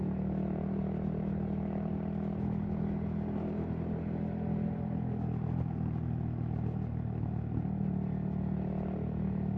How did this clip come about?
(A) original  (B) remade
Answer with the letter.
A